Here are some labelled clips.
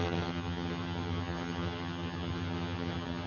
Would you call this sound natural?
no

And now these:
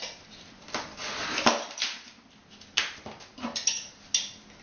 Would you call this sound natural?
yes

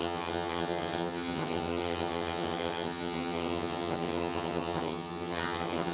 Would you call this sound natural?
no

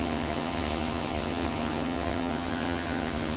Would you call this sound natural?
no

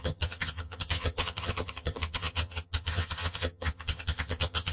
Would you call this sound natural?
no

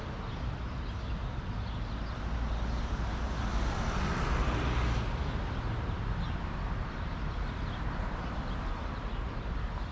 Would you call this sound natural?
yes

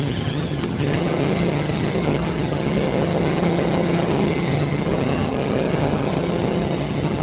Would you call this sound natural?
no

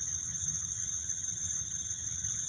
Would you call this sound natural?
no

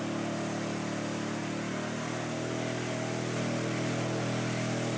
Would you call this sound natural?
yes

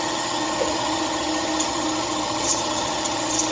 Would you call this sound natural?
no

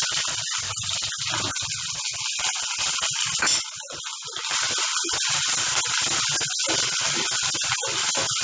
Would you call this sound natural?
yes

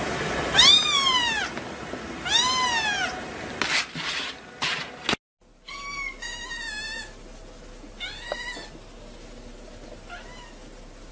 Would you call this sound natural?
yes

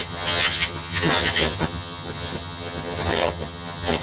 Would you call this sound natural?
no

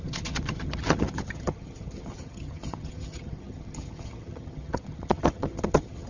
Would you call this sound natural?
no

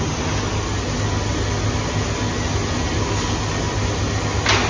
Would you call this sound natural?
yes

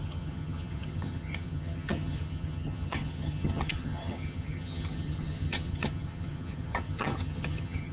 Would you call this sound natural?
no